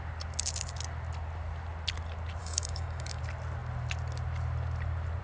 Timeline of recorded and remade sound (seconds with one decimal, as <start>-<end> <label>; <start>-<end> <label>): 0.0-2.4 recorded; 2.4-3.2 remade; 3.2-5.2 recorded